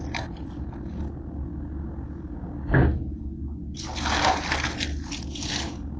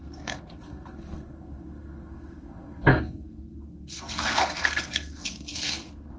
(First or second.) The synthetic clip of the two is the second